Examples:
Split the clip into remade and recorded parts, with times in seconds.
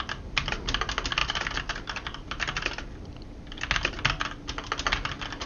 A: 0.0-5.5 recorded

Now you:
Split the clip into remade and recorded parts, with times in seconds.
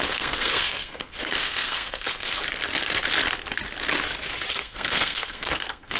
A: 0.0-2.4 remade; 2.4-4.5 recorded; 4.5-6.0 remade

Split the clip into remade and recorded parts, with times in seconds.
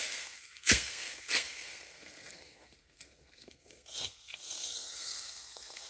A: 0.0-5.9 remade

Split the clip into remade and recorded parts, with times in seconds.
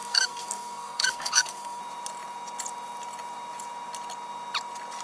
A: 0.0-1.8 remade; 1.8-5.0 recorded